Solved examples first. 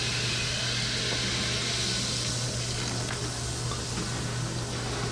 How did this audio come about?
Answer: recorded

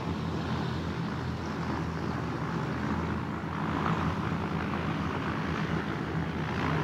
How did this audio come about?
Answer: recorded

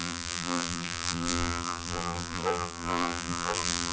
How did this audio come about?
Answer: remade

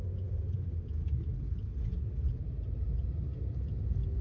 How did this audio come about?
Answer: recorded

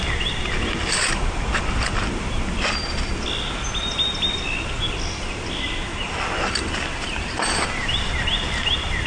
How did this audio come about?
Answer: recorded